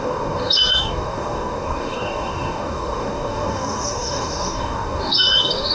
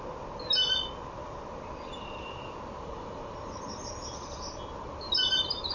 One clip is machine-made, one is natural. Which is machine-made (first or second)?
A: first